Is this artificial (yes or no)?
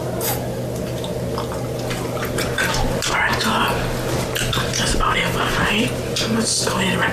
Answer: no